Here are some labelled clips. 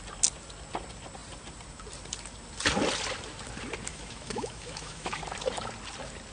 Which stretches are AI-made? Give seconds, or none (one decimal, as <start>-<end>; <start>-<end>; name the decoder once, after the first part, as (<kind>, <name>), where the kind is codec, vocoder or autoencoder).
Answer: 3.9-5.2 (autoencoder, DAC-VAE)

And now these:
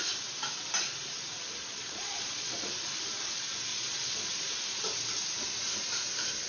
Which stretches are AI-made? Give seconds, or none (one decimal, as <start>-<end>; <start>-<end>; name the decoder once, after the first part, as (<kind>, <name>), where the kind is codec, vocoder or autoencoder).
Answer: 1.6-2.7 (vocoder, Vocos); 3.7-4.5

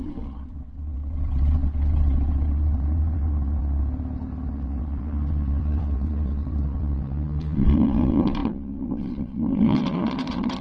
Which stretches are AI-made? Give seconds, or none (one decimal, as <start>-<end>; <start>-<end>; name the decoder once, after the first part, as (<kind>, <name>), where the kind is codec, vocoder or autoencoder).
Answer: 0.0-3.8 (vocoder, WaveNeXt); 4.5-10.6

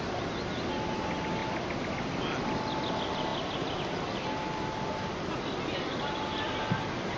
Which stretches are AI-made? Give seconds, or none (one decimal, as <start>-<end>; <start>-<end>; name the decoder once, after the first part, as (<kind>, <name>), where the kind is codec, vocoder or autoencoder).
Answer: none

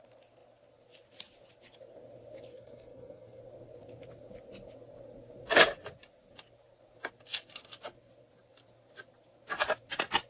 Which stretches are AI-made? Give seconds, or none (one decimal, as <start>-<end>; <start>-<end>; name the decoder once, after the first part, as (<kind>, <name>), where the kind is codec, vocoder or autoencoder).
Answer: 2.5-3.4 (codec, SNAC)

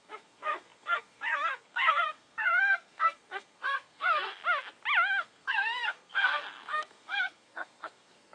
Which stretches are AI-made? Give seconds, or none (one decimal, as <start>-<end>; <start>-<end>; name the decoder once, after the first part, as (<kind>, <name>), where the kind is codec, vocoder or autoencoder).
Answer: 0.0-4.4 (codec, SNAC); 5.2-8.3

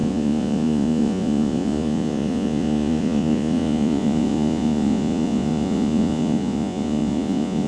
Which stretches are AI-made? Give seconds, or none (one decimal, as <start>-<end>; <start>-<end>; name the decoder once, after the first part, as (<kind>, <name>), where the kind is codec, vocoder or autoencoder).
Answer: 0.0-7.7 (vocoder, Vocos)